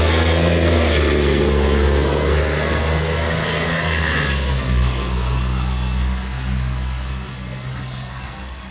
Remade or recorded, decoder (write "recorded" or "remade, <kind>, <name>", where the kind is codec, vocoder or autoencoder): remade, codec, SNAC